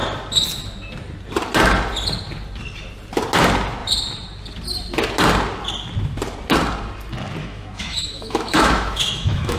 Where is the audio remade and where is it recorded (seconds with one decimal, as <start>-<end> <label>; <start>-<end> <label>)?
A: 0.0-7.4 recorded; 7.4-9.6 remade